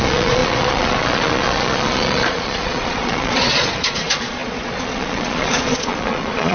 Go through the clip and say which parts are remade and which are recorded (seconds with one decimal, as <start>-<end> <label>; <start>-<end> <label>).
0.0-6.5 remade